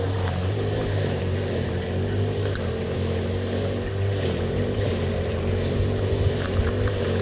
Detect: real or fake fake